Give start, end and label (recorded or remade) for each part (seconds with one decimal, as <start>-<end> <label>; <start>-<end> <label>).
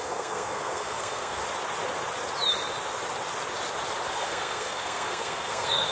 0.0-1.4 remade; 1.4-4.1 recorded; 4.1-5.9 remade